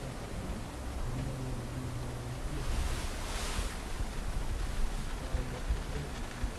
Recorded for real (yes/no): yes